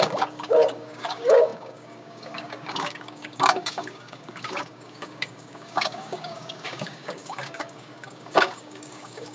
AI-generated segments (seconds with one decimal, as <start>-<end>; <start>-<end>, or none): 0.0-9.3

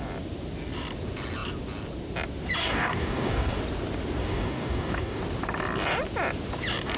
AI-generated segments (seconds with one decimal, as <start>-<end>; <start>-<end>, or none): 2.6-3.6; 4.2-5.2